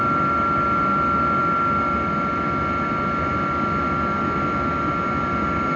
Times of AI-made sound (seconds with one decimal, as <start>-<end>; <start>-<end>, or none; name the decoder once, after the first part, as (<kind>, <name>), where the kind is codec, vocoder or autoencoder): none